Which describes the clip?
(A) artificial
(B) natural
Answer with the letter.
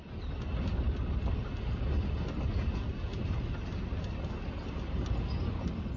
B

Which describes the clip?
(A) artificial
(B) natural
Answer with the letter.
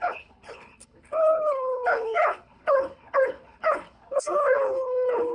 A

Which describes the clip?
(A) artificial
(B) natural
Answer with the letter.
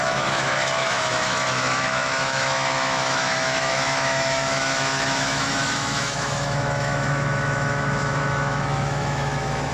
A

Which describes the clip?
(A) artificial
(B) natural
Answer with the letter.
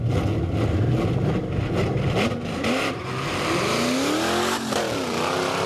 B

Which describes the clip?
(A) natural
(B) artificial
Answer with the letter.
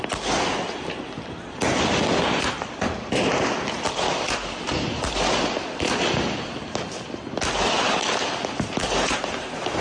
A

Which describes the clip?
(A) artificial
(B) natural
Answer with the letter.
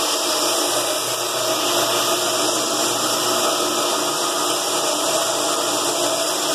B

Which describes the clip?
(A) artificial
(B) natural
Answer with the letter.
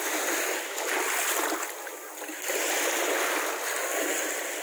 B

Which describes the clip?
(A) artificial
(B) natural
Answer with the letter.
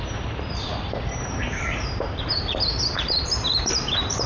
A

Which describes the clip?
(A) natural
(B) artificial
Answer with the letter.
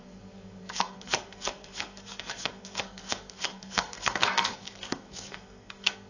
B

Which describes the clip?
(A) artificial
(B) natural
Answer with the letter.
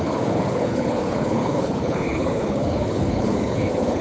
A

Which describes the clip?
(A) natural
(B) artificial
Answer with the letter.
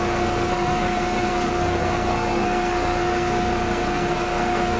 B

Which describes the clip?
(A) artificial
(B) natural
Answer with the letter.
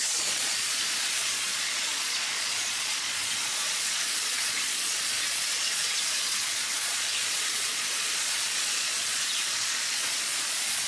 A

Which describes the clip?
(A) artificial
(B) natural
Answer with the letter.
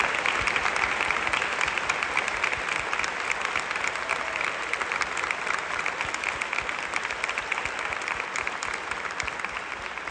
B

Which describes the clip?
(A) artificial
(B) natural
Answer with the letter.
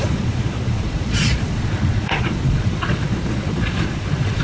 A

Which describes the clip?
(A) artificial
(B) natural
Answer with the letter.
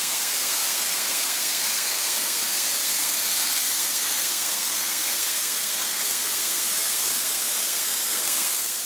A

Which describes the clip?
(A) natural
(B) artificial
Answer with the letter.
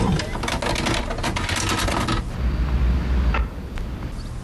A